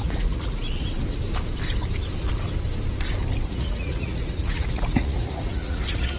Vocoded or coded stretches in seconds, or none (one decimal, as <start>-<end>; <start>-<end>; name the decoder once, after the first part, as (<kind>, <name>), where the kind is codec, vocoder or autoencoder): 0.0-0.6 (vocoder, Vocos); 3.5-6.2